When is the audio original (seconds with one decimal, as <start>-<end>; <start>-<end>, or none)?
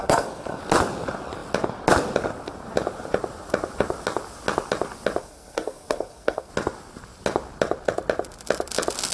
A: 0.6-5.2; 6.5-9.1